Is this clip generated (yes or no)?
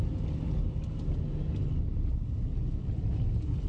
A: no